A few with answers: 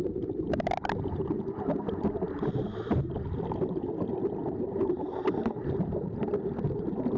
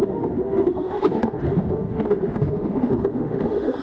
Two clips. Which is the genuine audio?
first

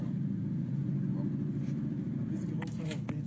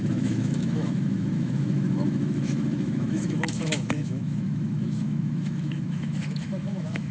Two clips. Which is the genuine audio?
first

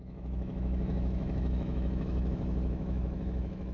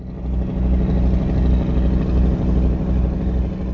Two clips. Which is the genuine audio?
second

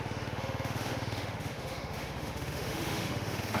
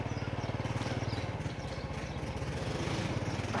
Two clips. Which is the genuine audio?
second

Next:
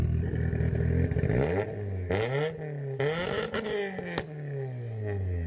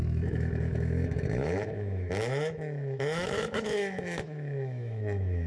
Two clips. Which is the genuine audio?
first